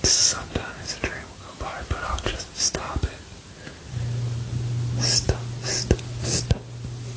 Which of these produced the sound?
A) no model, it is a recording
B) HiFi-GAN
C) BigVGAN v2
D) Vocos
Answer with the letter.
A